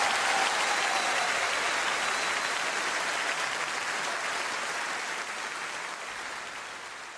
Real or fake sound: real